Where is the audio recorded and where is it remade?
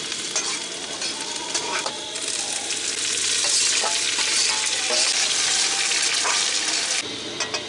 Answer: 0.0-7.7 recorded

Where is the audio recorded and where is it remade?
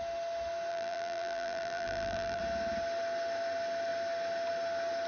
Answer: 0.0-0.7 recorded; 0.7-2.4 remade; 2.4-5.1 recorded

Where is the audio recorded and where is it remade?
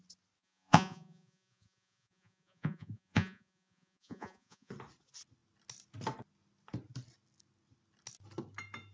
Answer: 0.0-0.4 recorded; 0.4-4.7 remade; 4.7-8.9 recorded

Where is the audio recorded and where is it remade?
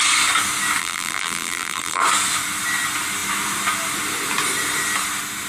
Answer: 0.0-0.8 recorded; 0.8-2.0 remade; 2.0-5.5 recorded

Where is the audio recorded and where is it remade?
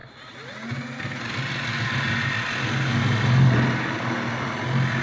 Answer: 0.0-5.0 recorded